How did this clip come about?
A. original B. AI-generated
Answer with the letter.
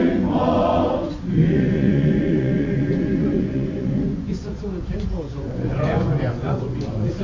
B